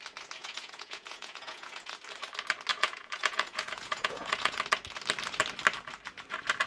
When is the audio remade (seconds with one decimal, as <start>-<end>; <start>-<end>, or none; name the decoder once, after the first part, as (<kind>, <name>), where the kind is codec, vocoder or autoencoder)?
0.4-1.9 (vocoder, Vocos); 2.7-4.6